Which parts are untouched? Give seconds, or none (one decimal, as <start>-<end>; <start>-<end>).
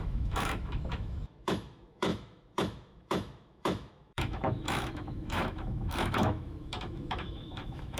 none